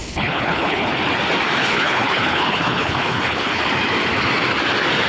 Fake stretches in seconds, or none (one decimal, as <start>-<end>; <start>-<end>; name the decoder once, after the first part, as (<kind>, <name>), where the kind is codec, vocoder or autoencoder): 0.0-0.9 (codec, HILCodec); 1.6-3.6